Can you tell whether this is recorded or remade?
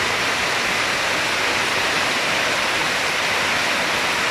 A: recorded